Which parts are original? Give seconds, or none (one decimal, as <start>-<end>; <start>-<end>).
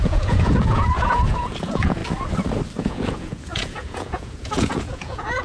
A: 2.0-2.8